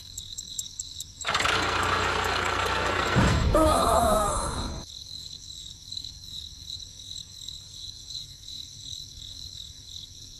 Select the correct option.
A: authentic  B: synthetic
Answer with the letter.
B